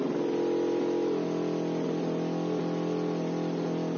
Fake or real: real